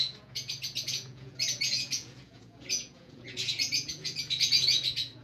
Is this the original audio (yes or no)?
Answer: no